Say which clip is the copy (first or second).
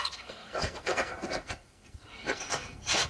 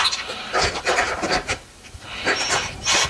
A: first